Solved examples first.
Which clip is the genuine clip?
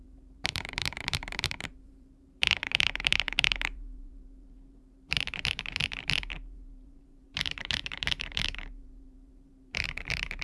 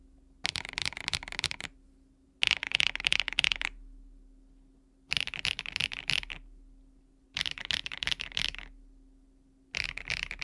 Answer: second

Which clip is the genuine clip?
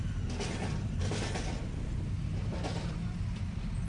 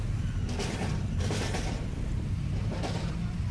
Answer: first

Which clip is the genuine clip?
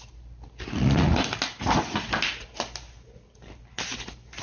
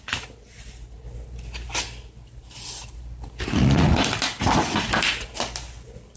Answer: first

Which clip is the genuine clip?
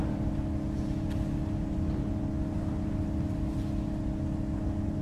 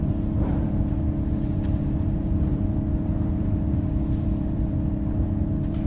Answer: first